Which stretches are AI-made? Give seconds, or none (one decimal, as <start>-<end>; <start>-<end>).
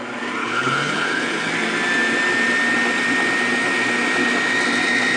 0.4-1.5